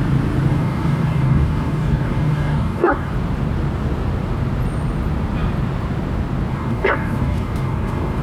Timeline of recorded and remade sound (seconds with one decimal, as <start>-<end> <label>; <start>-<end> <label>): 0.0-0.5 recorded; 0.5-3.1 remade; 3.1-6.5 recorded; 6.5-8.2 remade